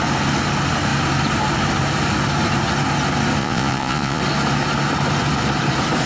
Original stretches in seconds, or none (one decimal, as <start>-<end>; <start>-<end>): 0.0-3.4; 4.2-6.1